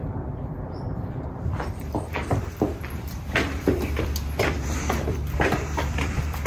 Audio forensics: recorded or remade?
remade